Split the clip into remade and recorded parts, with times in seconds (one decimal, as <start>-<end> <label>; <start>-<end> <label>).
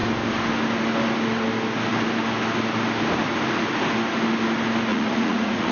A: 0.0-4.9 recorded; 4.9-5.7 remade